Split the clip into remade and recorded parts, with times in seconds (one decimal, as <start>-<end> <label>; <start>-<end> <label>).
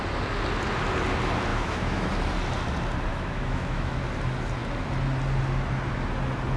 0.0-1.5 recorded; 1.5-2.1 remade; 2.1-3.1 recorded; 3.1-4.0 remade; 4.0-6.6 recorded